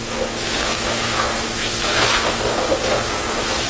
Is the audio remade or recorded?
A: remade